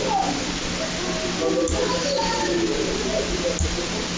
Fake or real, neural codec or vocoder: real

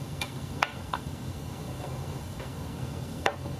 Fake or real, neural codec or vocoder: fake, codec, SNAC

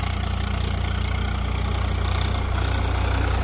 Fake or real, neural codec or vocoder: real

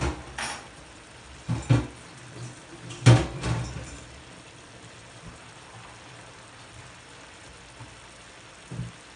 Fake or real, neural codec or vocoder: real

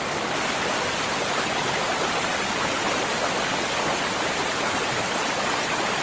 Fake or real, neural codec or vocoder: real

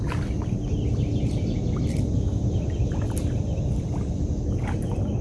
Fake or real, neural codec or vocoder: real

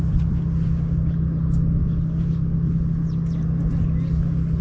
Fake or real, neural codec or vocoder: real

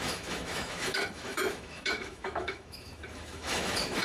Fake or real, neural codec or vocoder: fake, autoencoder, DAC-VAE